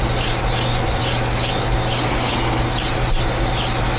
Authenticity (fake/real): real